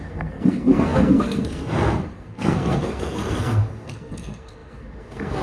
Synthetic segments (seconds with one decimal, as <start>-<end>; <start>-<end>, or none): 0.0-5.4